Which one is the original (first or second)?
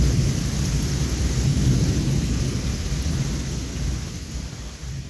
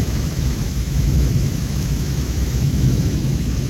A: first